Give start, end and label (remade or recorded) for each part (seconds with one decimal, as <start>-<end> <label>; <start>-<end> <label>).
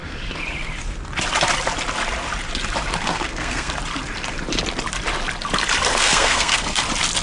0.0-3.0 recorded; 3.0-3.7 remade; 3.7-5.9 recorded; 5.9-6.8 remade; 6.8-7.2 recorded